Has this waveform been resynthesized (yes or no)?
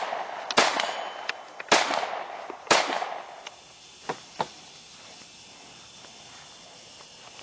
no